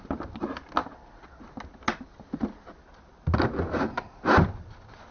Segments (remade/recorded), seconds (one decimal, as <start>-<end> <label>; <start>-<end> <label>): 0.0-5.1 recorded